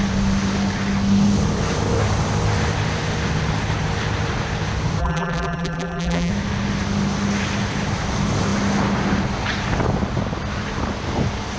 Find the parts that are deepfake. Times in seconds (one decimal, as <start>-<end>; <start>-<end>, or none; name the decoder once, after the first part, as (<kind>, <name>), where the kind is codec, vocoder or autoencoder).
5.0-6.3 (vocoder, BigVGAN v2)